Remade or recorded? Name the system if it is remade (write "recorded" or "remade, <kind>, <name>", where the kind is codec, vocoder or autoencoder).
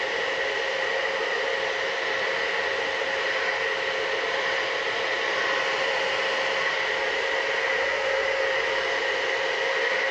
recorded